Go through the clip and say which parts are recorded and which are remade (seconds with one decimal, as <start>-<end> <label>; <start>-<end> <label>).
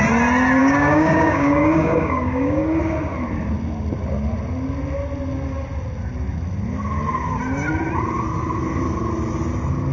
0.0-0.6 recorded; 0.6-2.8 remade; 2.8-9.9 recorded